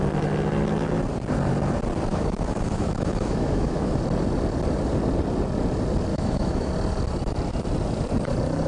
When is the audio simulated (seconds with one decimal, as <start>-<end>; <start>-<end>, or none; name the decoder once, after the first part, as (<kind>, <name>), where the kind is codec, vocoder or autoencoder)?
2.1-4.0 (autoencoder, DAC-VAE); 6.1-6.7